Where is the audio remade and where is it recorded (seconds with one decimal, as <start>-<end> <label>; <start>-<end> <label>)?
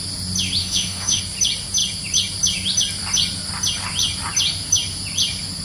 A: 0.0-0.6 recorded; 0.6-1.2 remade; 1.2-5.6 recorded